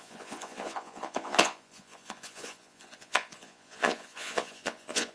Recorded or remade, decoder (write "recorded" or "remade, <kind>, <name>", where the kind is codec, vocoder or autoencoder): remade, vocoder, Vocos